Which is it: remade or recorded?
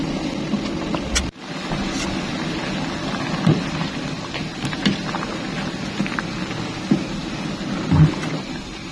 recorded